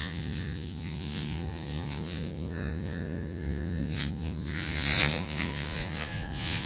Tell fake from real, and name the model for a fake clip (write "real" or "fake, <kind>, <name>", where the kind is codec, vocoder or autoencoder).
fake, vocoder, Vocos